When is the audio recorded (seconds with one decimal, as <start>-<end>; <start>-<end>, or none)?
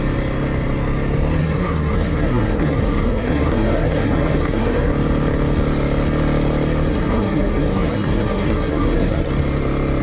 0.0-1.4; 4.9-6.9; 9.3-10.0